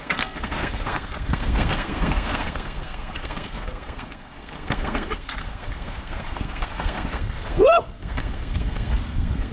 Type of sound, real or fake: fake